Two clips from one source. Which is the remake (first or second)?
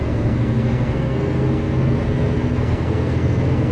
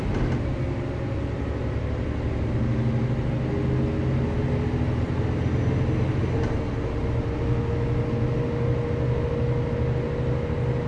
first